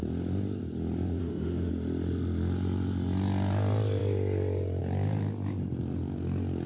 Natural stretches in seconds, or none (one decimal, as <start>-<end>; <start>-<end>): 0.0-1.2; 1.7-6.7